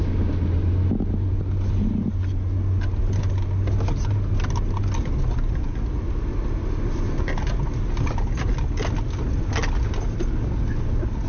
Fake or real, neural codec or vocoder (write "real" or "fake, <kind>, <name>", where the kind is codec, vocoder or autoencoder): real